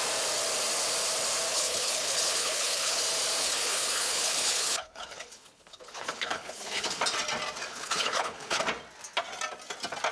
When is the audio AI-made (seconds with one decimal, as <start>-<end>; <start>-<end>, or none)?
1.5-3.0; 3.4-7.0; 7.7-8.6